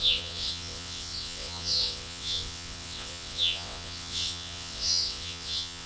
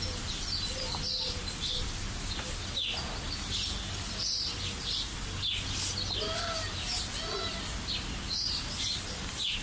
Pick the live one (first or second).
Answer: second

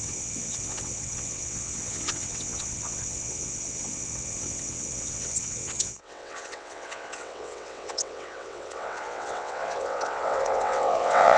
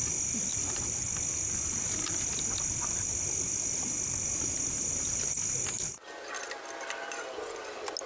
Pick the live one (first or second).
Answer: second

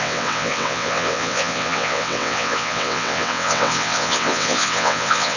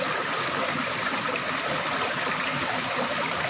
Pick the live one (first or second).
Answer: second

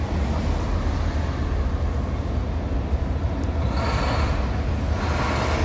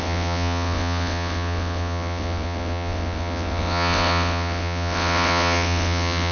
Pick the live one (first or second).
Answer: first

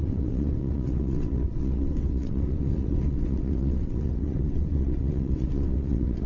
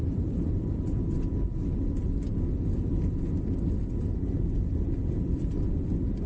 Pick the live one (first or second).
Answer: second